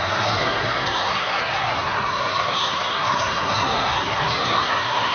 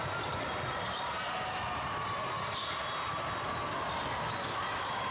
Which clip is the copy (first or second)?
first